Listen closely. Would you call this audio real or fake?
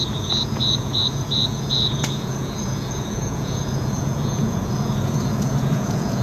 fake